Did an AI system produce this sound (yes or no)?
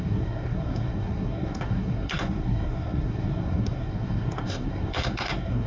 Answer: yes